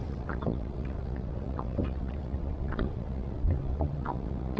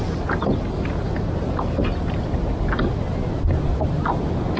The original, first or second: second